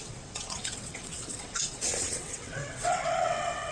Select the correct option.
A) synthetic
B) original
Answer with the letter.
A